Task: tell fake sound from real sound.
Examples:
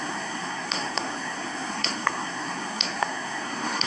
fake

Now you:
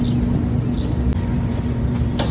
real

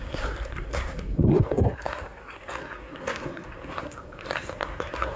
fake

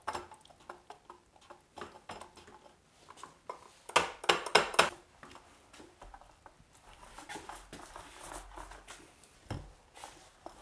real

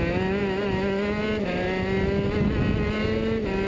real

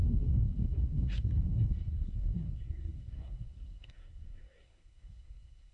fake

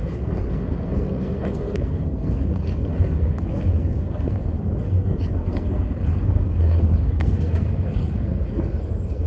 fake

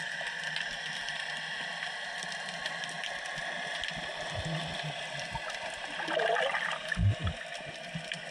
real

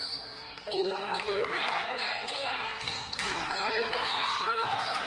fake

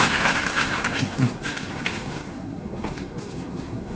fake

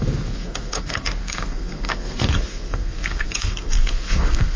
fake